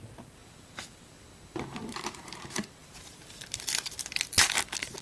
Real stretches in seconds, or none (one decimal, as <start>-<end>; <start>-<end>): 0.0-2.8; 4.4-5.0